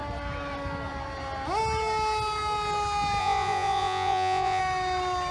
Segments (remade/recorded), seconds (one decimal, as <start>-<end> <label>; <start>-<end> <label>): 0.0-3.2 recorded; 3.2-4.6 remade; 4.6-5.3 recorded